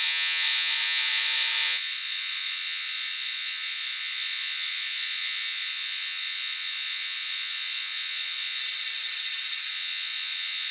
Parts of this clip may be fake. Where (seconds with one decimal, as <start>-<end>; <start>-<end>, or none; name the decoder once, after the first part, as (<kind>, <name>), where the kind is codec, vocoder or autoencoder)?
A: 0.0-8.6 (vocoder, Vocos); 9.7-10.7

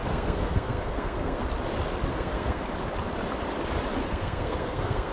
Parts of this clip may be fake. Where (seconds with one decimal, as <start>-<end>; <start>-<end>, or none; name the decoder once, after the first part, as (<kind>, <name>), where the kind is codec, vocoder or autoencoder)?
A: 0.0-1.4 (codec, SNAC); 2.1-2.6; 4.0-5.1

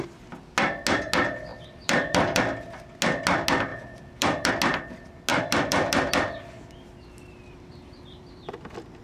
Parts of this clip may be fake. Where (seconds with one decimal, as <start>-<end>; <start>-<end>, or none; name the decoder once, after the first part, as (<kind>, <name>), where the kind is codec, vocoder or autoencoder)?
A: 1.5-2.4 (vocoder, BigVGAN v2); 3.7-4.5; 5.3-8.5

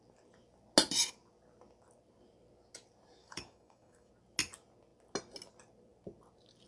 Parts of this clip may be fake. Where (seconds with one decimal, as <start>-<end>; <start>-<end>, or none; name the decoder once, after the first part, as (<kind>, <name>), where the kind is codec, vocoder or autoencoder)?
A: 3.2-4.1 (codec, DAC)